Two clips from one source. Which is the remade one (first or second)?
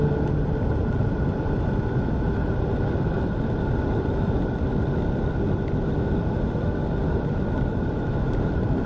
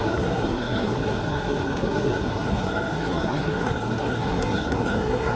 second